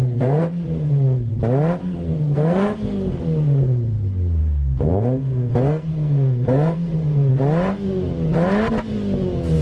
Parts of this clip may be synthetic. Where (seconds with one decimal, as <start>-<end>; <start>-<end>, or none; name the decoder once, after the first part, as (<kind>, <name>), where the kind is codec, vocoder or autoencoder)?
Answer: 0.0-1.3 (codec, SNAC); 1.8-3.2; 4.4-7.3